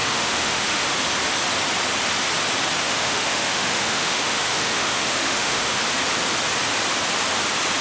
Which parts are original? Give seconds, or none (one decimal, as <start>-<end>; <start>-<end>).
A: 0.9-2.8; 5.8-7.8